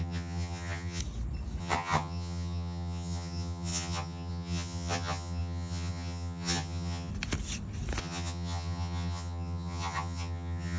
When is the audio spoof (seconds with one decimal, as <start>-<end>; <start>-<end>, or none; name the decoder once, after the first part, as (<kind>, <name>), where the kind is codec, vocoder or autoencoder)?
0.0-1.0 (vocoder, HiFi-GAN); 1.6-7.1; 8.0-10.8